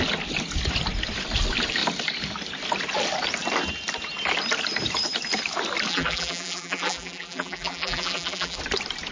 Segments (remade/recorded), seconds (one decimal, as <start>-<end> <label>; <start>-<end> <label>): 0.0-5.9 recorded; 5.9-8.6 remade; 8.6-9.1 recorded